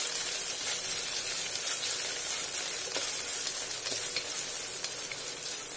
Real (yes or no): yes